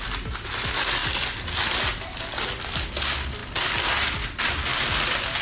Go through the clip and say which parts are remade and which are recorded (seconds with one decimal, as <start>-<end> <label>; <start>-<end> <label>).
0.0-5.4 recorded